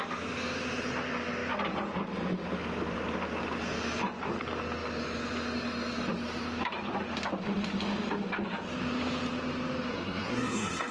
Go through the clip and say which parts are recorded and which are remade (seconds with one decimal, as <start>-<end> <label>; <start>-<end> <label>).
0.0-9.9 recorded; 9.9-10.9 remade